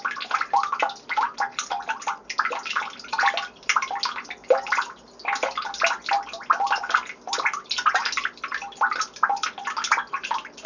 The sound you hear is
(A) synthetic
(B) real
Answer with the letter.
B